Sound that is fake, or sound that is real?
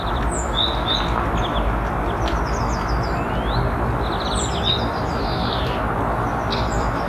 real